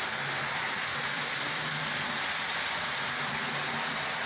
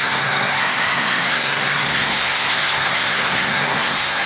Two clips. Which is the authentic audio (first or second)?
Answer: first